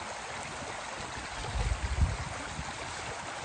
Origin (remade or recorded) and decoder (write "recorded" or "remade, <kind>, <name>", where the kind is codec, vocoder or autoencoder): recorded